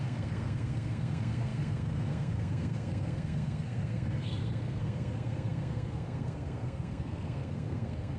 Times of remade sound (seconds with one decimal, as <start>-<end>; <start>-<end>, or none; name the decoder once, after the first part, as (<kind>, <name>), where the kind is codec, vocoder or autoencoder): 0.0-8.2 (codec, SNAC)